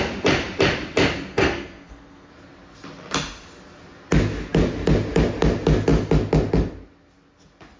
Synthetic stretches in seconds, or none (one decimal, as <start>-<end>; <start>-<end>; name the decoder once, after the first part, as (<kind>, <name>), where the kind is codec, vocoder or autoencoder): 1.3-2.3 (codec, SNAC)